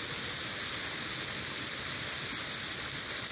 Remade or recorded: recorded